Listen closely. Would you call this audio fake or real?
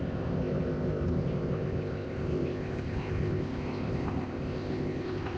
fake